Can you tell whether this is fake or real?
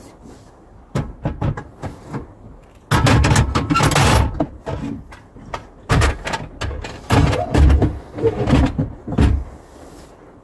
real